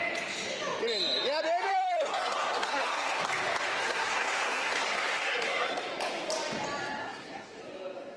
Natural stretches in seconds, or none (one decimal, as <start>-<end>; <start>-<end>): 0.0-1.7; 3.2-3.7; 5.8-7.0; 7.6-8.2